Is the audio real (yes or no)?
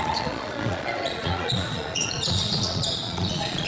no